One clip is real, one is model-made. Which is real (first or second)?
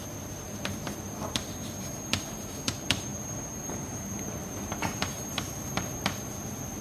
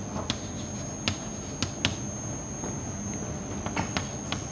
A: second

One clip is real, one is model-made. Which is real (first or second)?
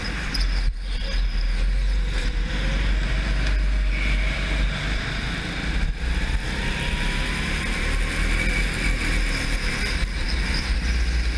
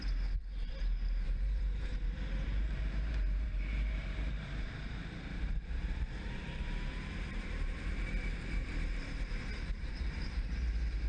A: first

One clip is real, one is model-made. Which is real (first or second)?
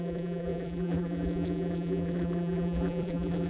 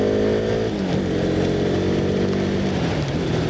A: second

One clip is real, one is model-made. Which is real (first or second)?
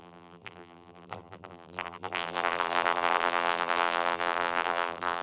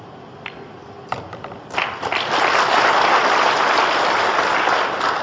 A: second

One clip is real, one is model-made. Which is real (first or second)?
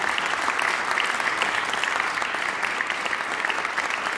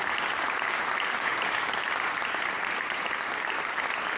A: first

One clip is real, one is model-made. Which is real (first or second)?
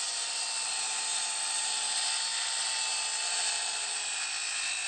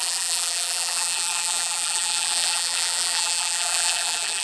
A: first